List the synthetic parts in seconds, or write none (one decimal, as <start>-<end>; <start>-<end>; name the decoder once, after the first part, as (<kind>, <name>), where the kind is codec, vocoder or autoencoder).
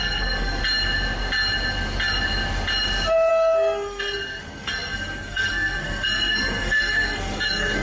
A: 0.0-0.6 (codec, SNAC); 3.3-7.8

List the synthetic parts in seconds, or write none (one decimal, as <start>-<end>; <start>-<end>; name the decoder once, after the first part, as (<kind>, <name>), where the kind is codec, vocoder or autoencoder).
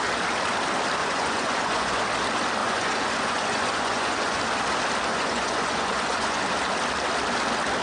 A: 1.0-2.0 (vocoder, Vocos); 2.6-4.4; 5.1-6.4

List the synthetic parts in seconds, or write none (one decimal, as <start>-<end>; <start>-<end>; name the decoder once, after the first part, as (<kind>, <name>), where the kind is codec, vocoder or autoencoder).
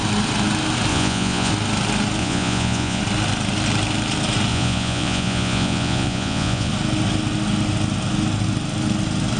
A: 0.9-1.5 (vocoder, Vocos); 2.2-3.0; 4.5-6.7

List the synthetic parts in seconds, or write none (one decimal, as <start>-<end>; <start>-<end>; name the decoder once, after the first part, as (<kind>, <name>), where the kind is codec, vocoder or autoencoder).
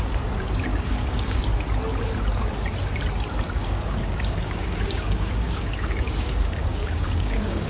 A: 0.7-1.4 (codec, DAC); 3.6-7.7